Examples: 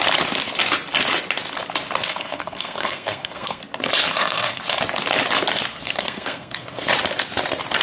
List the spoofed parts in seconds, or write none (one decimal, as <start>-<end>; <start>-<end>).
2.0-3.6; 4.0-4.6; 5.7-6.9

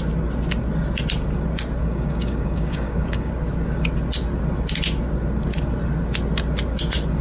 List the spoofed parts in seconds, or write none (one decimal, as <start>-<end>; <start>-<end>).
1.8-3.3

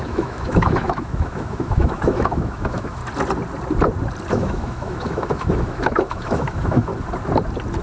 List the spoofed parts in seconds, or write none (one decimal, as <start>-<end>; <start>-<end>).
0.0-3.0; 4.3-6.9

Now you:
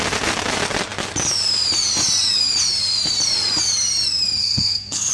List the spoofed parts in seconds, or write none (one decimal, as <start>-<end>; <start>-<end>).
4.4-5.1

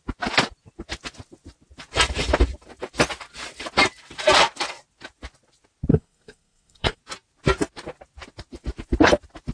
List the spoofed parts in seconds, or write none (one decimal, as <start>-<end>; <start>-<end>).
5.9-7.0

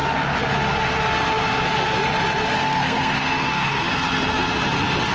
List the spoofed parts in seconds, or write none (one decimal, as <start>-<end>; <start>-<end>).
2.6-3.8

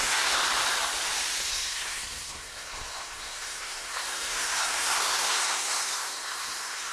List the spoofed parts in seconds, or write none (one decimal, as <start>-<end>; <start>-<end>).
0.0-0.4; 1.5-6.9

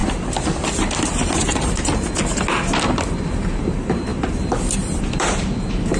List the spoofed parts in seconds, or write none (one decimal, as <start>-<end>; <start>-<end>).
3.6-6.0